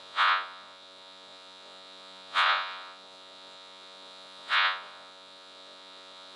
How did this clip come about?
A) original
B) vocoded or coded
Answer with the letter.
B